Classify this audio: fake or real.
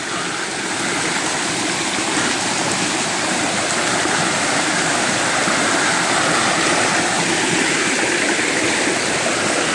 real